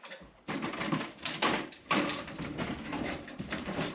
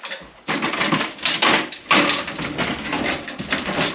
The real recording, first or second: second